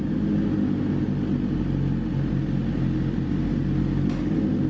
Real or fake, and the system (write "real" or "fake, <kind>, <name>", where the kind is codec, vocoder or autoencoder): real